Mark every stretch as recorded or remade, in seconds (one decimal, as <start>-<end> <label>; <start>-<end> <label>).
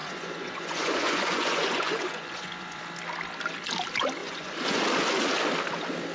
0.0-2.8 remade; 2.8-4.2 recorded; 4.2-4.8 remade; 4.8-6.1 recorded